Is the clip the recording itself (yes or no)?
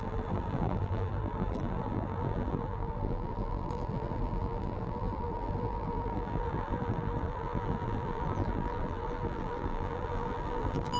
no